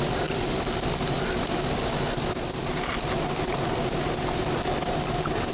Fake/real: real